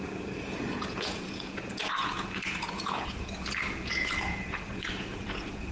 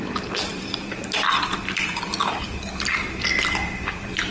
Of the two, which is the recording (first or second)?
second